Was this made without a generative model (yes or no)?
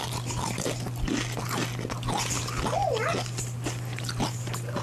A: yes